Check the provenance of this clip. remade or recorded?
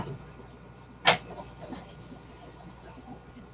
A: recorded